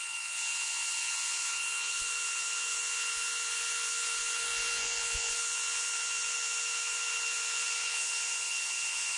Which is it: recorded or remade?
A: remade